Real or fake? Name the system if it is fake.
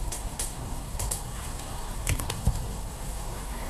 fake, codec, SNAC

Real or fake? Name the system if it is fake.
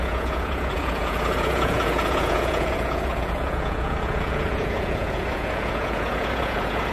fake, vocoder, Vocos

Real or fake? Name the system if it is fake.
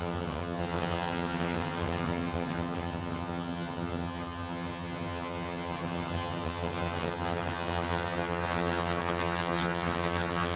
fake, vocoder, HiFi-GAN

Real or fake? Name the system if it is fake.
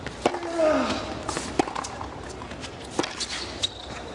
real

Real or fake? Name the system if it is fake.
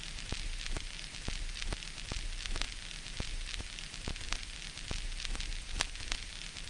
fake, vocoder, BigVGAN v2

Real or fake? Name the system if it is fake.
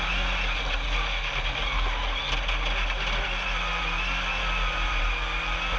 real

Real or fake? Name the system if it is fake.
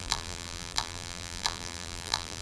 fake, vocoder, BigVGAN v2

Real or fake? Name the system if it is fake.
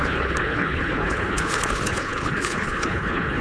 fake, codec, HILCodec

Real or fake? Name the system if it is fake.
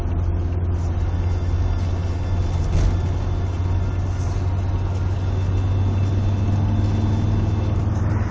real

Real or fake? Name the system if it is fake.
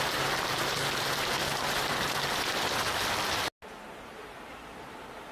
real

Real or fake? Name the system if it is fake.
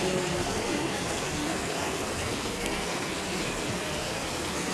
fake, codec, SNAC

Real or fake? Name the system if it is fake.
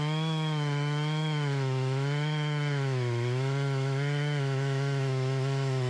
fake, autoencoder, DAC-VAE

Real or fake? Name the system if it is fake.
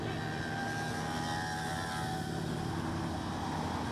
real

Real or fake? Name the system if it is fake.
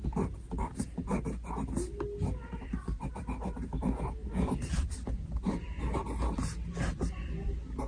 real